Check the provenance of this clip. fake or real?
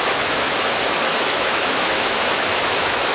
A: fake